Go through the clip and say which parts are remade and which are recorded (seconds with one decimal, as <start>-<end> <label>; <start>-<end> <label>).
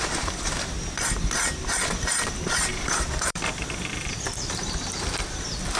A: 0.0-2.7 recorded; 2.7-5.8 remade